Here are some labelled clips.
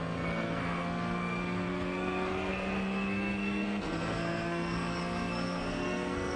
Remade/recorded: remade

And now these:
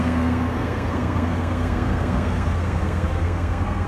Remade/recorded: remade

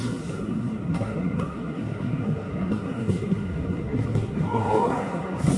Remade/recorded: remade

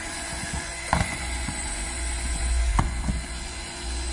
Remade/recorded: remade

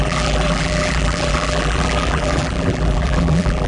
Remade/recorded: remade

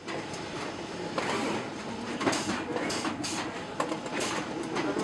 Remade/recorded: remade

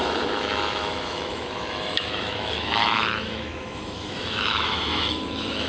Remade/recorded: remade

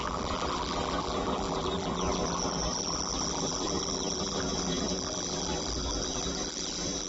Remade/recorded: remade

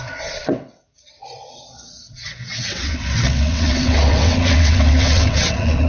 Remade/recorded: remade